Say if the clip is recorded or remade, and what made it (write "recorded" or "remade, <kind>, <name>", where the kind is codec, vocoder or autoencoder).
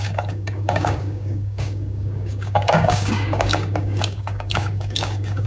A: remade, codec, DAC